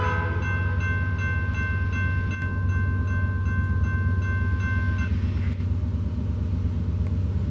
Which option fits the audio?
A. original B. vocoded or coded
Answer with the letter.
A